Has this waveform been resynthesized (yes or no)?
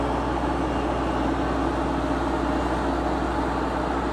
no